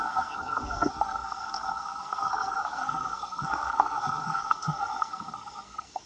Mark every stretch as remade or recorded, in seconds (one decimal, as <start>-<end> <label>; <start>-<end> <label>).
0.0-6.1 remade